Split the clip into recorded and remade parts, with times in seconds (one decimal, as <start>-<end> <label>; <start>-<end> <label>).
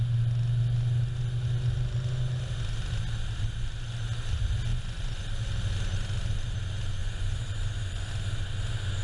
0.0-4.7 recorded; 4.7-5.3 remade; 5.3-7.0 recorded; 7.0-8.1 remade; 8.1-9.0 recorded